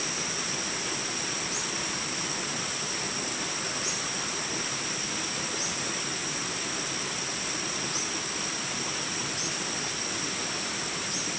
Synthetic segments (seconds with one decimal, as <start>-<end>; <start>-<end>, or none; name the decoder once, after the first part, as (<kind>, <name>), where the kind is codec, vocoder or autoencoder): none